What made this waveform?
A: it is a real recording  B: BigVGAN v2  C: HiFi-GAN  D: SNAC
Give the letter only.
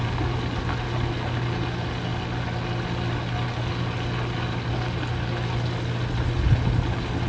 A